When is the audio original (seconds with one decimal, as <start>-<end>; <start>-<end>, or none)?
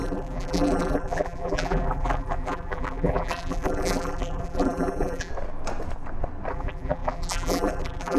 5.3-6.5